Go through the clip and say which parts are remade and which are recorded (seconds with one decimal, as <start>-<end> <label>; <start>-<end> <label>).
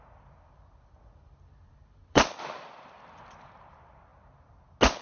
0.0-4.1 remade; 4.1-5.0 recorded